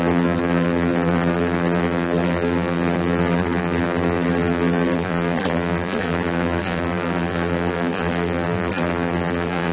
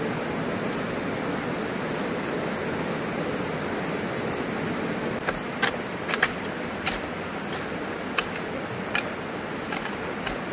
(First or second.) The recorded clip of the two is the second